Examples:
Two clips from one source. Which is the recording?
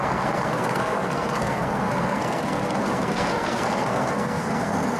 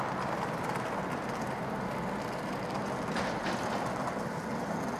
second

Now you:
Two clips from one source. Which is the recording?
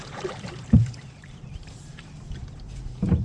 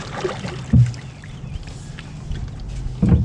second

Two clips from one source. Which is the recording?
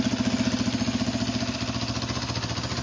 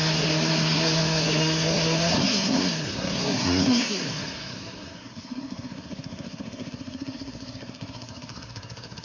first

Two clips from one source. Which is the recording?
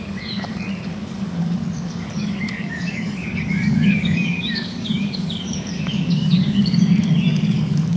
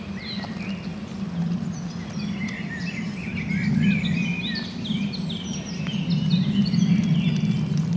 second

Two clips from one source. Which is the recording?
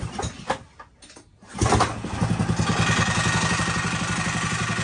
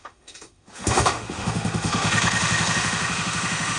first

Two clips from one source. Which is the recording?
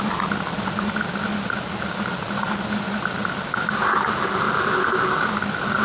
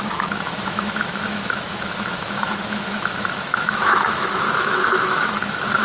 first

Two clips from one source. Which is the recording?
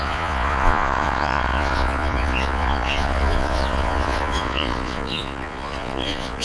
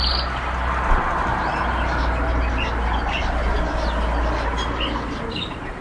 second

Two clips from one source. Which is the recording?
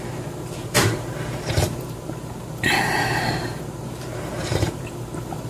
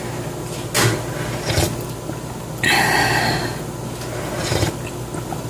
second